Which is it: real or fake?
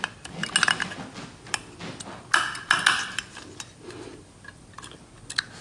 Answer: real